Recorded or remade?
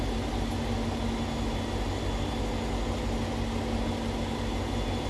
recorded